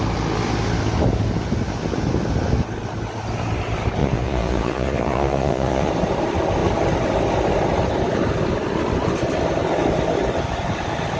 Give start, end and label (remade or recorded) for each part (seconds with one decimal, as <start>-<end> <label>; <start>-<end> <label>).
0.0-4.0 recorded; 4.0-5.9 remade; 5.9-11.2 recorded